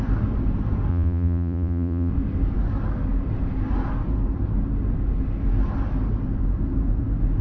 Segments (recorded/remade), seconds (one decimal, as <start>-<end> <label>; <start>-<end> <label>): 0.0-0.9 recorded; 0.9-2.1 remade; 2.1-7.4 recorded